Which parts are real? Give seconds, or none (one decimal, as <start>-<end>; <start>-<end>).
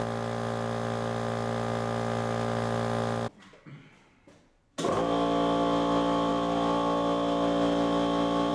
0.0-8.5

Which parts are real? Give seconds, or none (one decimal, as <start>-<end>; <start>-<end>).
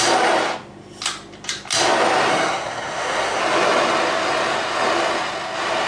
0.0-2.3; 3.4-5.9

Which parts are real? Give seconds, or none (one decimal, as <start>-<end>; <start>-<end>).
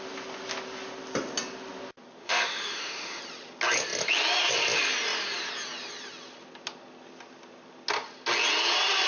0.0-2.2; 3.2-9.1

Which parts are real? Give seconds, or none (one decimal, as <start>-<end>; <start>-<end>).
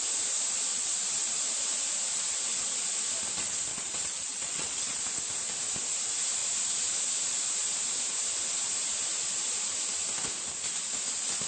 0.0-0.7; 1.4-3.7; 5.0-11.5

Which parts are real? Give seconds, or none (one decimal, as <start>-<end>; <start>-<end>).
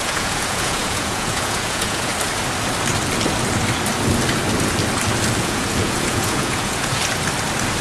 2.1-5.4; 7.0-7.8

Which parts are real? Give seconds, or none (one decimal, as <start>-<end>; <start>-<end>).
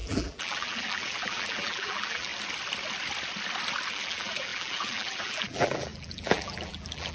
2.3-3.9